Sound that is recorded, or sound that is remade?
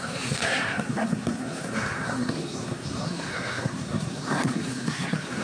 remade